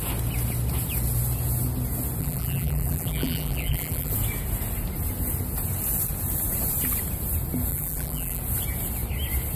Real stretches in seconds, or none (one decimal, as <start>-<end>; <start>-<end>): 0.0-2.2; 4.1-7.7; 8.4-9.6